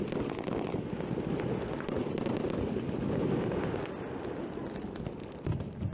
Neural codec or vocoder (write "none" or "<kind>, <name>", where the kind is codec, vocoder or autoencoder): none